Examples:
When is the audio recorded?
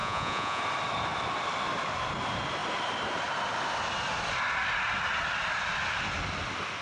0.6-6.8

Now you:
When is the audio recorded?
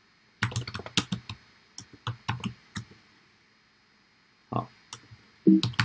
0.0-2.6; 3.5-5.8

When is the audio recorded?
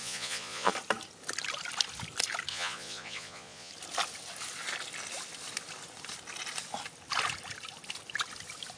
0.7-2.5; 3.7-8.8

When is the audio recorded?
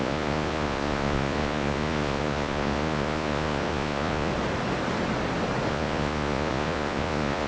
4.3-5.7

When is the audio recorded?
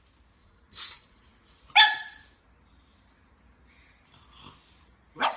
0.0-0.4; 1.3-5.4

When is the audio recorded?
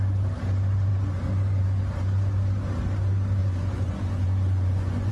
0.0-3.4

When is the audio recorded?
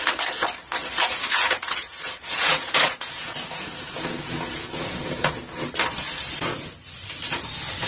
0.0-1.0; 5.3-7.9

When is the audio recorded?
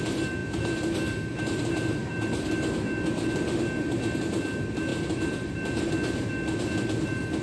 0.0-7.4